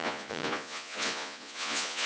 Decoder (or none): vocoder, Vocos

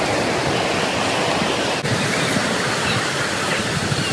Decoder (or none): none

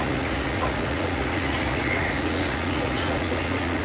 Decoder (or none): vocoder, Vocos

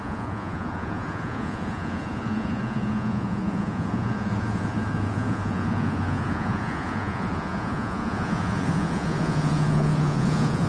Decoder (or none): vocoder, Vocos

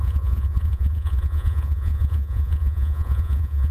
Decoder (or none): vocoder, Vocos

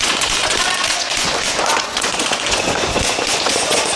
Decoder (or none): vocoder, Vocos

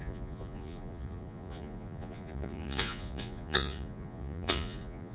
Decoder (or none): vocoder, Vocos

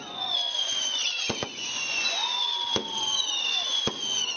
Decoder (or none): vocoder, Vocos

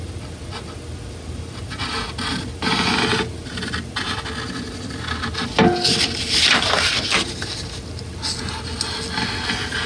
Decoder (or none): none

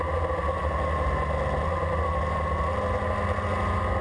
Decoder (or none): none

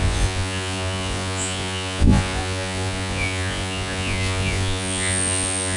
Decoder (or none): vocoder, Vocos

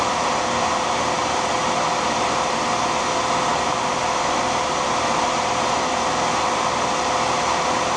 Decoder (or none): none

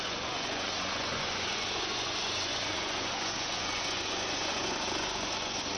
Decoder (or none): vocoder, Vocos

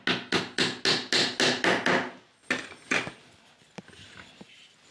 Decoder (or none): none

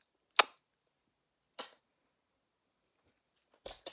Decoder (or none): none